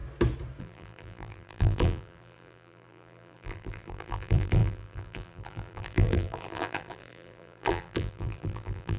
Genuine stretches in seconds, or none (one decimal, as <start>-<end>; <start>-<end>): 0.0-0.6